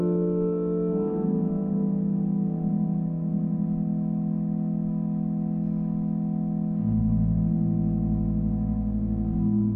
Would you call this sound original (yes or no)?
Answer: yes